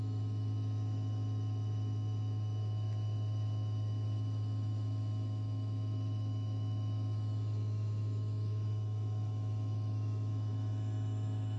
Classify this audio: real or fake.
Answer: fake